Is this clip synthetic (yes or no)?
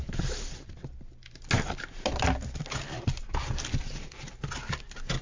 no